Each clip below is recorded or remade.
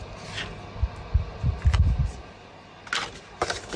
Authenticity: recorded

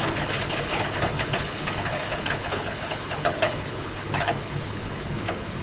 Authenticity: remade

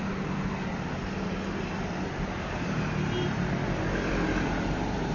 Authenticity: recorded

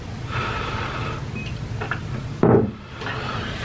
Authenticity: recorded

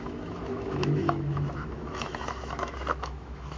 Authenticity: remade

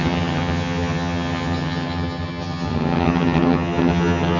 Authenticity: remade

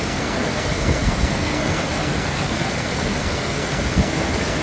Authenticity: remade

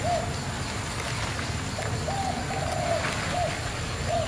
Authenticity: recorded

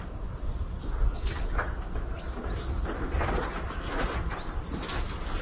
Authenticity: remade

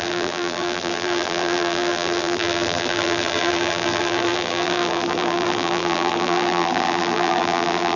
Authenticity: remade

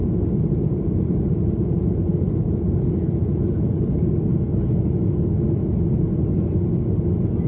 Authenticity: recorded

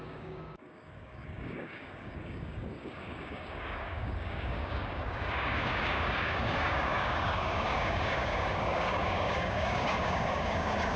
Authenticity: remade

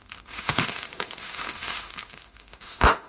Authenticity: remade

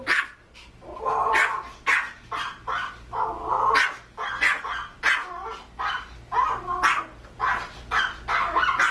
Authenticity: recorded